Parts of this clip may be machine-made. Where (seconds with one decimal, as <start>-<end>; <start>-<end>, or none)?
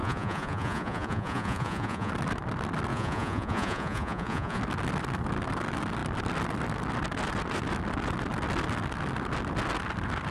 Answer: 0.0-2.1; 2.9-4.6